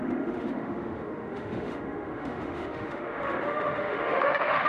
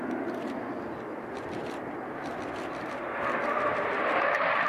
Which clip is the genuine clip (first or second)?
second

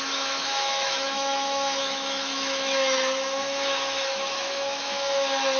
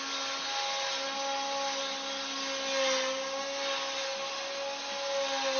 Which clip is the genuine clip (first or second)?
second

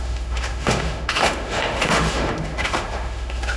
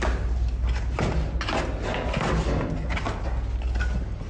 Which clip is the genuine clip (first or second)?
second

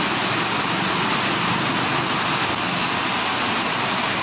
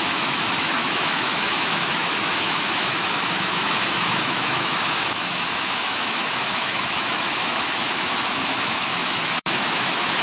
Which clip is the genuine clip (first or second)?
first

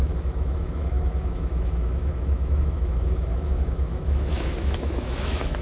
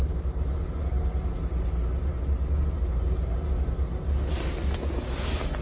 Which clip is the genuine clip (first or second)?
second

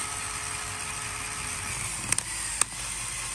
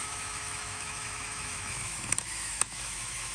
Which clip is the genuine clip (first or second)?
first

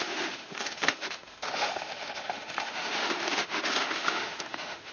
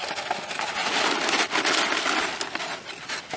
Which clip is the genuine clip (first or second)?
second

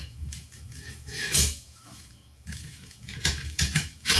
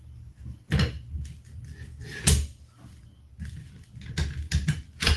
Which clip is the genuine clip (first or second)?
second